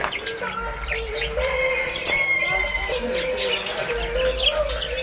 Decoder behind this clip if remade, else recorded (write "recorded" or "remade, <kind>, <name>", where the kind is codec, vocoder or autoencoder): recorded